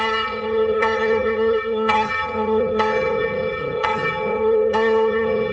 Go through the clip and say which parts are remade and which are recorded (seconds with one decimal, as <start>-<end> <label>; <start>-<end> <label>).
0.0-5.5 remade